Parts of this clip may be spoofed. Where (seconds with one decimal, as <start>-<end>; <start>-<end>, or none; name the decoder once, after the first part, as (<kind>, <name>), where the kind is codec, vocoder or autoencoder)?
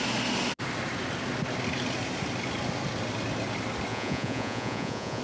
3.9-5.2 (vocoder, Vocos)